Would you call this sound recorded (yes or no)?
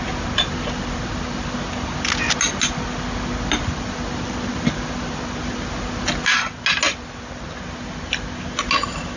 yes